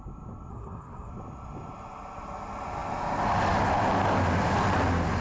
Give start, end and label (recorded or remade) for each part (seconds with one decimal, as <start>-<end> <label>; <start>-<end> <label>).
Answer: 0.0-0.5 recorded; 0.5-1.1 remade; 1.1-5.2 recorded